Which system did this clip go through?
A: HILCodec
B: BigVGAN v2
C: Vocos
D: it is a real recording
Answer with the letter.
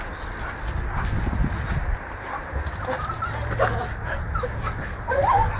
D